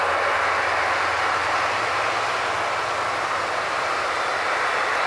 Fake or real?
real